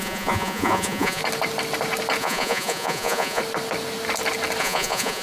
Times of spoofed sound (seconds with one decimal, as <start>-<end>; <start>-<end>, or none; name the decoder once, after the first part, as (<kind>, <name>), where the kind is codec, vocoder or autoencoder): 0.0-1.2 (vocoder, Vocos); 2.2-3.4; 4.6-5.2